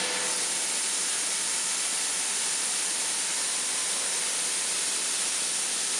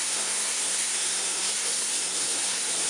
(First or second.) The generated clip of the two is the second